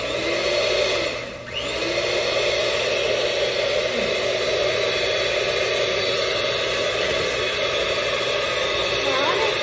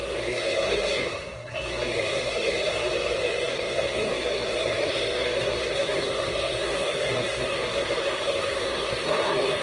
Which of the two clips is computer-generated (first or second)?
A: second